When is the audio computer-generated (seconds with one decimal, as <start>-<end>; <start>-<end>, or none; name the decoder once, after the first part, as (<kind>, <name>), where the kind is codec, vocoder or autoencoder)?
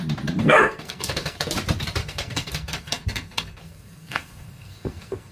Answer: 0.4-1.5 (codec, SNAC); 2.0-5.3